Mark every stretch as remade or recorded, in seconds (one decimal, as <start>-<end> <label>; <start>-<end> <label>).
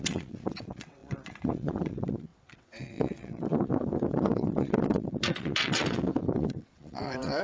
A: 0.0-7.4 remade